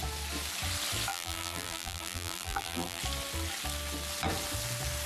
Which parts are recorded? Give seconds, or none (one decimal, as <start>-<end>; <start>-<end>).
0.0-1.1; 3.0-5.1